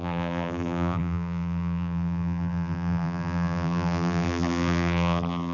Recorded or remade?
remade